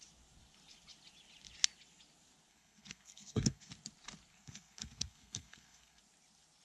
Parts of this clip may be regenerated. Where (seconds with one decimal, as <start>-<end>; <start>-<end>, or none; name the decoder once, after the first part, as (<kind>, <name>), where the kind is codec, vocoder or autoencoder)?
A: 2.5-3.7 (codec, SNAC); 4.3-6.0